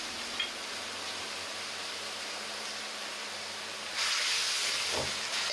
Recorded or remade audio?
recorded